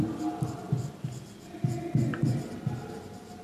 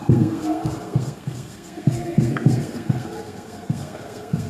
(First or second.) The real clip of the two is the first